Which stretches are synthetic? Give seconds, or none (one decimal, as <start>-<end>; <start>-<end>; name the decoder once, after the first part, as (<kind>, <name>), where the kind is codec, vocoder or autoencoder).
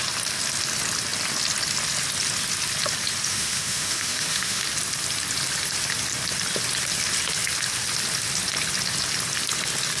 3.3-4.6 (autoencoder, DAC-VAE)